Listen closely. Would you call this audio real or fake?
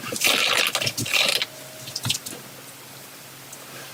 real